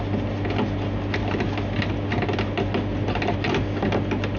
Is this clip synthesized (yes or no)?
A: no